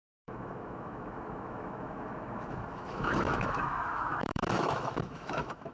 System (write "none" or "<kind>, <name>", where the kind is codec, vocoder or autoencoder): autoencoder, DAC-VAE